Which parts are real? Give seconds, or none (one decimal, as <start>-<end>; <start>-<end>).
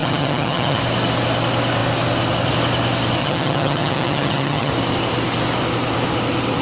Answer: 0.8-3.2; 4.7-6.6